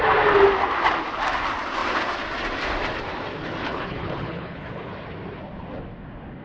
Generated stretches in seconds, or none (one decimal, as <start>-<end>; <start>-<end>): 3.6-4.9